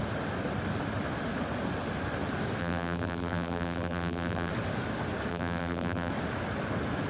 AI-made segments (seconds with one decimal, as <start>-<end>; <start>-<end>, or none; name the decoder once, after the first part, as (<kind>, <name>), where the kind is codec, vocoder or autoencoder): 2.6-4.5 (vocoder, BigVGAN v2); 5.3-6.1